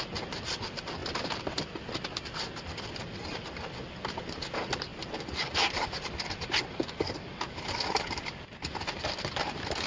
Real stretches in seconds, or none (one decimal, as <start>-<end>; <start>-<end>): 0.0-9.9